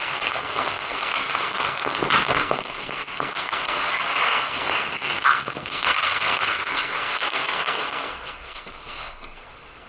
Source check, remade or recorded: remade